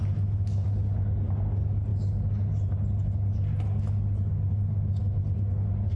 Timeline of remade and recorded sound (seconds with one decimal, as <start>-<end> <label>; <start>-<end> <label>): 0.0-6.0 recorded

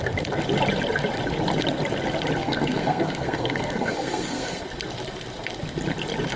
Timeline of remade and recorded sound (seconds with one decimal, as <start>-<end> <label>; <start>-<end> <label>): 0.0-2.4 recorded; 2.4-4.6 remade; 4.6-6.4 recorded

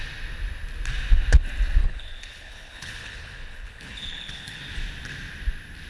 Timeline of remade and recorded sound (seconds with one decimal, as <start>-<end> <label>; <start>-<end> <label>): 0.0-1.8 recorded; 1.8-4.6 remade; 4.6-5.9 recorded

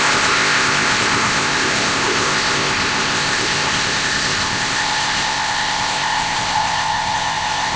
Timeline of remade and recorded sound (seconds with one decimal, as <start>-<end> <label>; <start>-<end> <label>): 0.0-7.8 remade

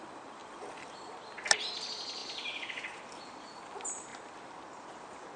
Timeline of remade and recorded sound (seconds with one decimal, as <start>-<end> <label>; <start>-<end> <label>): 0.0-5.4 recorded

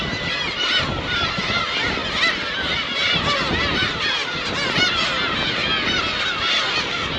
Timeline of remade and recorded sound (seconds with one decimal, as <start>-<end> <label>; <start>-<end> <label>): 0.0-2.0 remade; 2.0-6.3 recorded; 6.3-7.2 remade

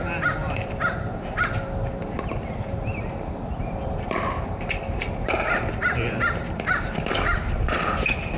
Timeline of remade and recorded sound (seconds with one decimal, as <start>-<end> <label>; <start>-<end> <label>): 0.0-0.4 recorded; 0.4-5.3 remade; 5.3-5.8 recorded; 5.8-6.9 remade; 6.9-8.4 recorded